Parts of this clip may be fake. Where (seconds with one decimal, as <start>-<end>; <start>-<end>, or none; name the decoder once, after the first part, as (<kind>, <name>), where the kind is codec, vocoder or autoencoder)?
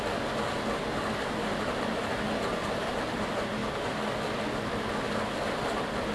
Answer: 1.5-2.1 (vocoder, BigVGAN v2); 2.6-3.2